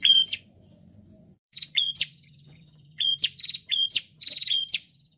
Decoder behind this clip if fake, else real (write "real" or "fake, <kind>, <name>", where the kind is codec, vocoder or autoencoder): fake, vocoder, Vocos